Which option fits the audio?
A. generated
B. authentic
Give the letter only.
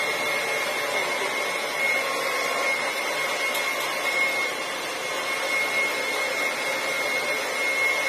B